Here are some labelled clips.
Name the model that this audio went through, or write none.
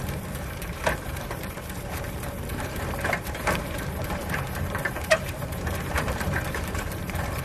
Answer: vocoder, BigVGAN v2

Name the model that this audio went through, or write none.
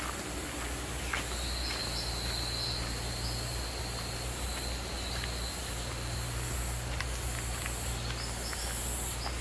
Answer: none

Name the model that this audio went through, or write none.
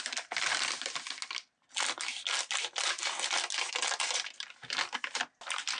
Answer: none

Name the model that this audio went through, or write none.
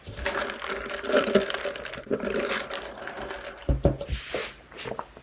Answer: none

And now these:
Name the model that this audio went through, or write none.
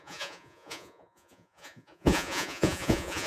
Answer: vocoder, Vocos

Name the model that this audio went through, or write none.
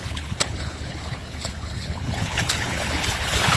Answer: codec, HILCodec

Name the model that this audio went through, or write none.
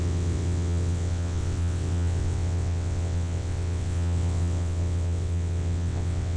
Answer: vocoder, WaveNeXt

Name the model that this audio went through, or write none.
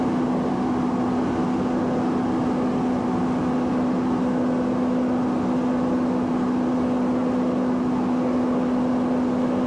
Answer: none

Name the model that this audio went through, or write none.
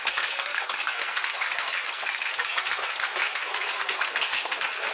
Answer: codec, SNAC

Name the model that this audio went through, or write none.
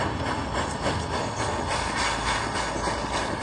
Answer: none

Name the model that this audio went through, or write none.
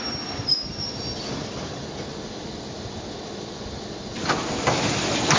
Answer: none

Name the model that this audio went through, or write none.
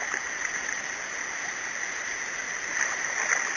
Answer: none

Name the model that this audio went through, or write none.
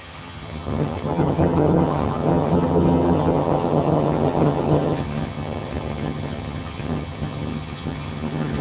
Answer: vocoder, HiFi-GAN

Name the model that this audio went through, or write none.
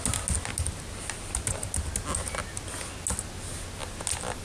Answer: none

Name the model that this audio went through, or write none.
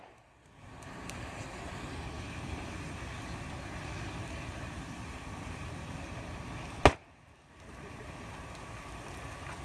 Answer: none